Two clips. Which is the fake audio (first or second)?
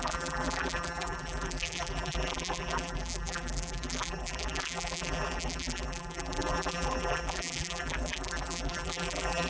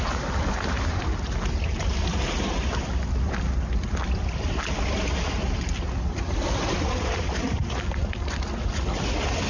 first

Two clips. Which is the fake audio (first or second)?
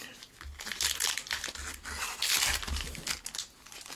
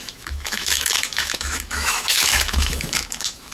second